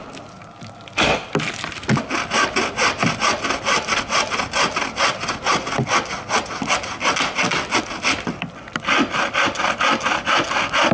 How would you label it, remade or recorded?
recorded